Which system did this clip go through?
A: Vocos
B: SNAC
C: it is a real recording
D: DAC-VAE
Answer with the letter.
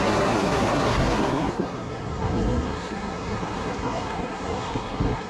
B